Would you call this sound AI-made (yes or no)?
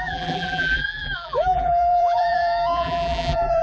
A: yes